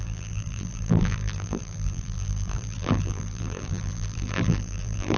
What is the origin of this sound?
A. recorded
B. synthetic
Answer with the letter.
B